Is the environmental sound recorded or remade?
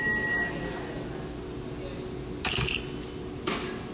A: recorded